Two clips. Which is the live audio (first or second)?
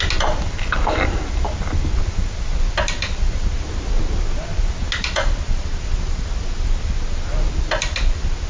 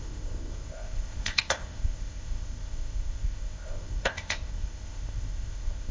first